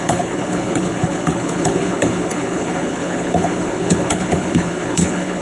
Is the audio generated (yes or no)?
yes